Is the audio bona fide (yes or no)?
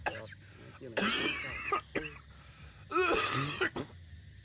yes